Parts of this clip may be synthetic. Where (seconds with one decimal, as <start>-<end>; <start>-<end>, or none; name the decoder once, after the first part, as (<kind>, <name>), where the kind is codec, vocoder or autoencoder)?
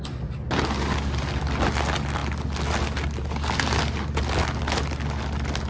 none